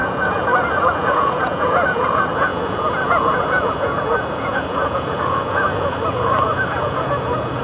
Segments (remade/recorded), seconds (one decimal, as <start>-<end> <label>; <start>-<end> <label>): 0.0-7.6 remade